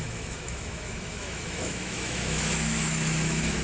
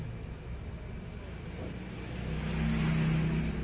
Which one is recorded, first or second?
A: second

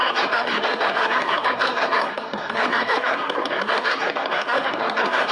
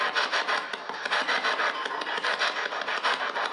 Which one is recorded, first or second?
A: second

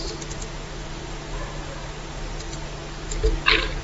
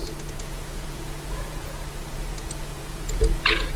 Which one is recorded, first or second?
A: first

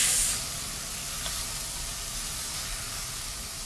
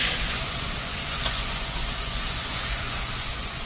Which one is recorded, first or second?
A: first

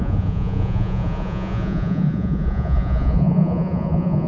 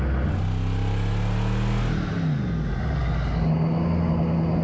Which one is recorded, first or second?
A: second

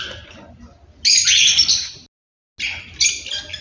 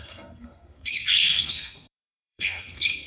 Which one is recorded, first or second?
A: first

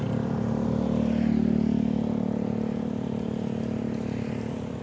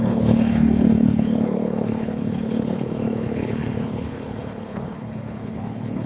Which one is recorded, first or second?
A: first